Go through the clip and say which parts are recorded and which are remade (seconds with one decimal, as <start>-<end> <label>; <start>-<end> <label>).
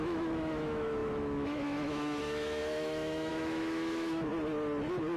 0.0-4.3 remade; 4.3-5.2 recorded